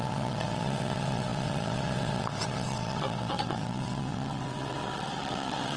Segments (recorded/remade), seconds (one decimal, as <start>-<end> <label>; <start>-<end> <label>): 0.0-5.8 remade